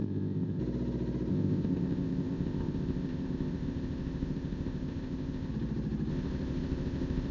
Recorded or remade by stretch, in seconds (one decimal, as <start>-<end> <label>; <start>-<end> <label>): 0.0-0.6 remade; 0.6-1.3 recorded; 1.3-5.5 remade; 5.5-6.1 recorded; 6.1-7.3 remade